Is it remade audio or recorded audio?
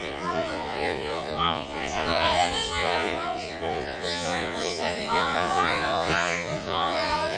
remade